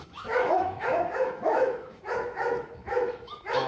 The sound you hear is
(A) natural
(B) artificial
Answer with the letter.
B